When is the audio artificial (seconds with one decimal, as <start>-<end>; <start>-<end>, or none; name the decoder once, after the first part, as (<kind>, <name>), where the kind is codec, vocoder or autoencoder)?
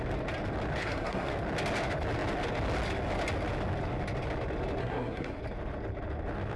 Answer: 0.8-1.3 (codec, SNAC); 4.8-5.4